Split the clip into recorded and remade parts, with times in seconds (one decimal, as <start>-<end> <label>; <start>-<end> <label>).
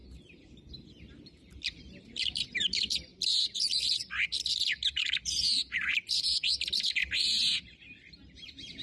0.0-8.8 remade